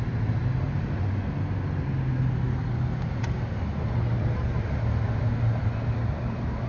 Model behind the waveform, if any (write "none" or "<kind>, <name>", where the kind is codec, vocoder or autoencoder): none